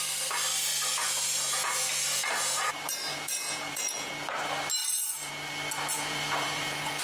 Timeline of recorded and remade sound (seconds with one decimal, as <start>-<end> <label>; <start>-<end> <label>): 0.0-0.9 recorded; 0.9-2.7 remade; 2.7-3.1 recorded; 3.1-4.1 remade; 4.1-4.8 recorded; 4.8-5.3 remade; 5.3-5.9 recorded; 5.9-7.0 remade